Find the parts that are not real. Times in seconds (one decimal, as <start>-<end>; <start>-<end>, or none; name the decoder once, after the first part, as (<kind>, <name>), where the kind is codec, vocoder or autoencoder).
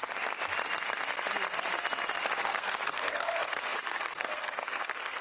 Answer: 2.4-5.2 (codec, SNAC)